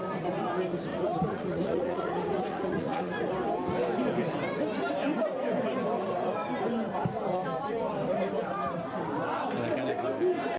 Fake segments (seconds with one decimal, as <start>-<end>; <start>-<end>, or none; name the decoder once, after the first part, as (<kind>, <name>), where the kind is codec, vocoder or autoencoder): 0.9-3.3 (vocoder, Vocos)